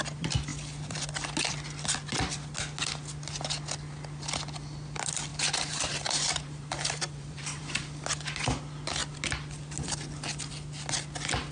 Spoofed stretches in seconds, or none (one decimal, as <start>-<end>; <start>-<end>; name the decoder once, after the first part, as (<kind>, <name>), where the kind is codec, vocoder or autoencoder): 5.3-7.6 (vocoder, BigVGAN v2)